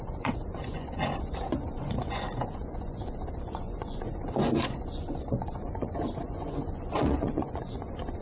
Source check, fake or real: fake